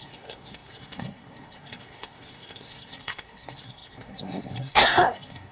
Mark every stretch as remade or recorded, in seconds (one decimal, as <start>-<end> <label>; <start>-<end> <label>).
0.0-5.5 remade